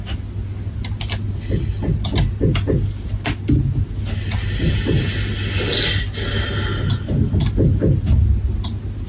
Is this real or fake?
real